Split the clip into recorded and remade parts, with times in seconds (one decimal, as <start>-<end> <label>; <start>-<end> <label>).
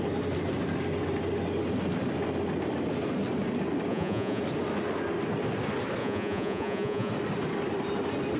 0.0-3.9 recorded; 3.9-4.4 remade; 4.4-6.0 recorded; 6.0-7.1 remade; 7.1-8.4 recorded